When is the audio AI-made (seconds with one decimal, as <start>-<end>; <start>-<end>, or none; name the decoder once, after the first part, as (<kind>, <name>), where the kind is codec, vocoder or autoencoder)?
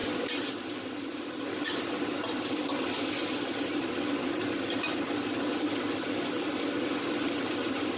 none